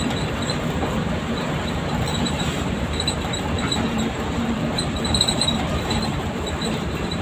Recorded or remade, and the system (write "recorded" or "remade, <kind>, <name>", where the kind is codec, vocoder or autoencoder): remade, vocoder, BigVGAN v2